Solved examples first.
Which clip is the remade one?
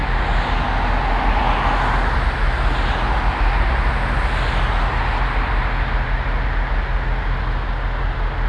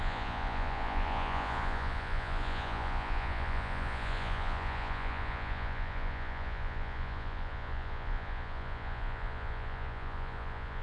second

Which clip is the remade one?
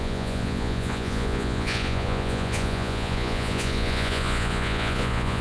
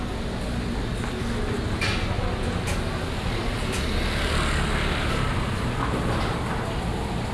first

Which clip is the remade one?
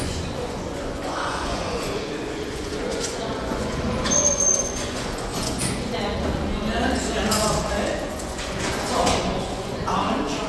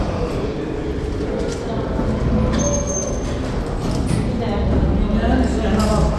first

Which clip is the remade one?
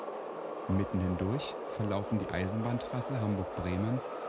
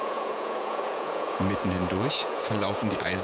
second